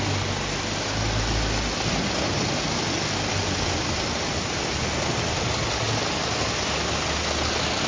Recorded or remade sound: recorded